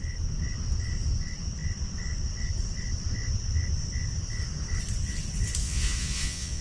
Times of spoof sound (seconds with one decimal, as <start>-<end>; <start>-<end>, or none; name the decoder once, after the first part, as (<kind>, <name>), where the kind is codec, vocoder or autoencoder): 5.6-6.6 (vocoder, Vocos)